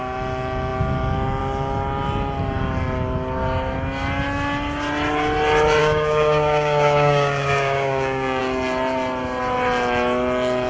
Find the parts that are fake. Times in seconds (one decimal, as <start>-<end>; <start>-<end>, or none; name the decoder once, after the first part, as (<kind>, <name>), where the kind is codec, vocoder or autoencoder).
5.8-8.4 (codec, DAC)